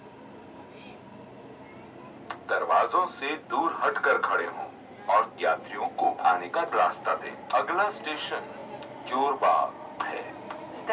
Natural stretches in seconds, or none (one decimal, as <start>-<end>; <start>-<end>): 0.0-10.9